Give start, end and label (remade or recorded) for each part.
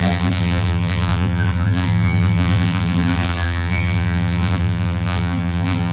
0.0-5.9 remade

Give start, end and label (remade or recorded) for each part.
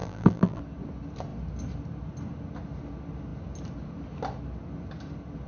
0.0-0.6 remade; 0.6-5.5 recorded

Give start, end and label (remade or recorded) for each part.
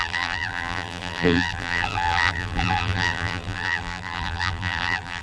0.0-5.2 remade